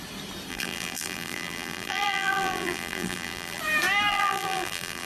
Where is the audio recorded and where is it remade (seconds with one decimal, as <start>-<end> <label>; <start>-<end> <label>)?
0.0-0.5 recorded; 0.5-3.6 remade; 3.6-4.1 recorded; 4.1-5.1 remade

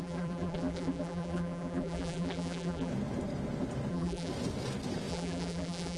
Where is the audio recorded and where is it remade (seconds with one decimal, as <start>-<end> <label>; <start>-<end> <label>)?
0.0-2.9 remade; 2.9-3.9 recorded; 3.9-4.3 remade; 4.3-5.1 recorded; 5.1-6.0 remade